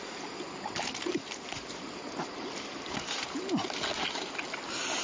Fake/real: real